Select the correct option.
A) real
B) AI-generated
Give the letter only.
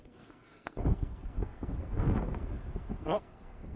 B